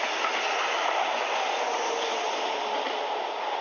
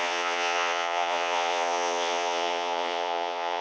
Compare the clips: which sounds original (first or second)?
first